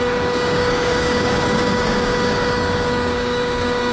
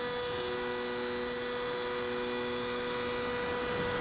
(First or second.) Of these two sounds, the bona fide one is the second